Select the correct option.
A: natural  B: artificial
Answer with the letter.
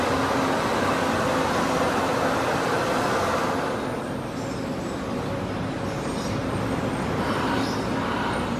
A